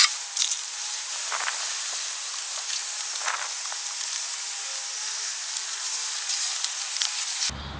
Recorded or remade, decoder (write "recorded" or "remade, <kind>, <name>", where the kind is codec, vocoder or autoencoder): recorded